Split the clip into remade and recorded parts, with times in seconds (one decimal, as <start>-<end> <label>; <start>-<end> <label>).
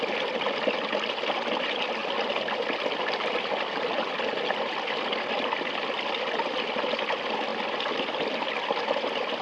0.0-7.5 recorded; 7.5-8.1 remade; 8.1-9.4 recorded